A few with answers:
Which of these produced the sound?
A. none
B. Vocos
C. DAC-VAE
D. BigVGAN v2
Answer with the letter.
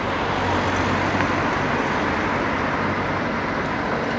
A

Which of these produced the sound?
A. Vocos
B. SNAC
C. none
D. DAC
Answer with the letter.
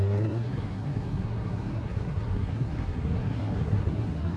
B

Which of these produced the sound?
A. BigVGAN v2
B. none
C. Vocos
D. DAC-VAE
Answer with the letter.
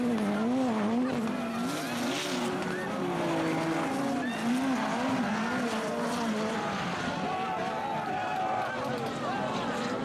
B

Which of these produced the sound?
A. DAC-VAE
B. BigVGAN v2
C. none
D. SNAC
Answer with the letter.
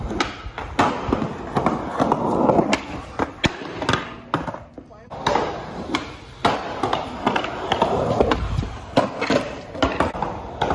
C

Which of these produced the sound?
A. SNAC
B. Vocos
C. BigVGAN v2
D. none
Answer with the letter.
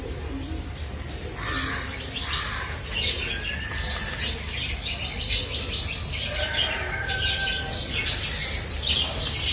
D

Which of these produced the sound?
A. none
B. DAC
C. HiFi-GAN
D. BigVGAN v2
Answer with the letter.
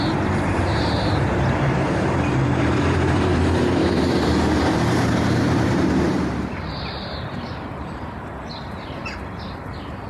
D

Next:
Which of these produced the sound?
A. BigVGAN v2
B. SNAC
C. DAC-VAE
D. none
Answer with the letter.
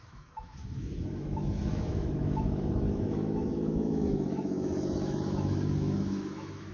C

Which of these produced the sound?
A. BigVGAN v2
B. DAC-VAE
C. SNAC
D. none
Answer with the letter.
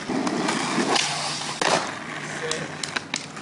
D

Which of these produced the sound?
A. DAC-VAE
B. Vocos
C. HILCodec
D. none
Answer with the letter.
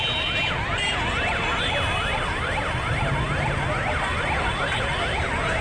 D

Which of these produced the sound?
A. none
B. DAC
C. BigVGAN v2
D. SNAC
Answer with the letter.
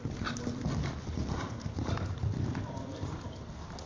A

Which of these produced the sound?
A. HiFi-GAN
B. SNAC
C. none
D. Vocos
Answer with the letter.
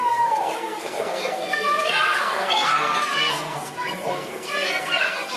B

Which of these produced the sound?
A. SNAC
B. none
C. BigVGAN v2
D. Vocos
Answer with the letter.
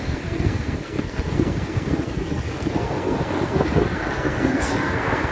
A